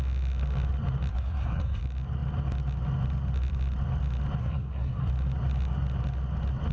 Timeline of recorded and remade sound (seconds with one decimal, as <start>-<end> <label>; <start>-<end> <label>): 0.0-1.1 recorded; 1.1-1.8 remade; 1.8-4.4 recorded; 4.4-5.1 remade; 5.1-6.7 recorded